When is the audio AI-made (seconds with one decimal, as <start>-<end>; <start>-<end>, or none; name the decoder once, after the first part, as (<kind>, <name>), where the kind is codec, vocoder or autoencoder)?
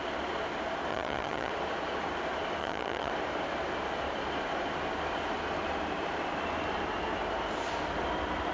0.9-1.5 (vocoder, HiFi-GAN); 2.6-3.1